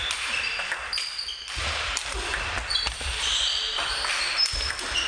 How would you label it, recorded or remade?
recorded